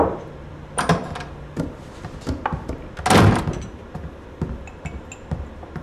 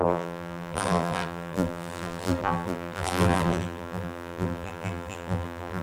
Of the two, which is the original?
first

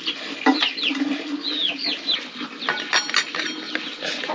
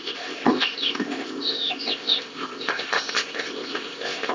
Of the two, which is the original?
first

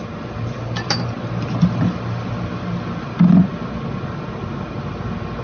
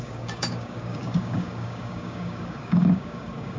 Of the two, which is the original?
first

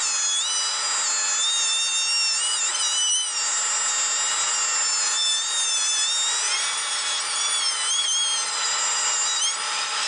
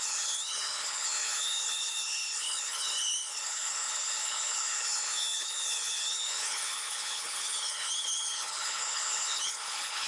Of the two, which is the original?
first